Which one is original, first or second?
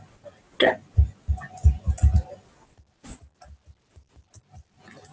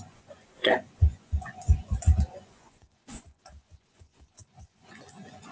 first